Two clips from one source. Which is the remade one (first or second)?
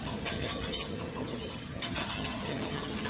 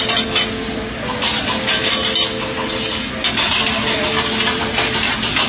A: first